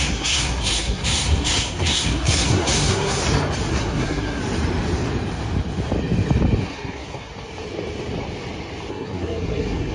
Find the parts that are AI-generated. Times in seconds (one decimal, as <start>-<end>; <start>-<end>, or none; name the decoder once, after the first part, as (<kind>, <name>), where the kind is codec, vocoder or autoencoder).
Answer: 0.0-3.2 (codec, SNAC); 3.7-4.4; 6.6-7.3; 8.9-9.9